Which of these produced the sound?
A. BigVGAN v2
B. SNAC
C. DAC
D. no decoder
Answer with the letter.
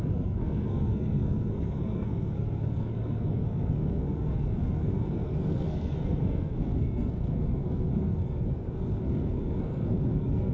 B